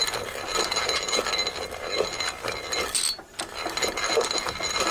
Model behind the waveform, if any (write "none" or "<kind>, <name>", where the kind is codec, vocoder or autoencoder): none